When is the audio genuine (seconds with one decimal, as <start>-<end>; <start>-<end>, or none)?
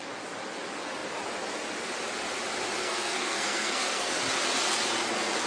0.0-2.8; 4.2-5.5